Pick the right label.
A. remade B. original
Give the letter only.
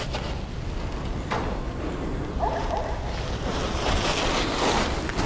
B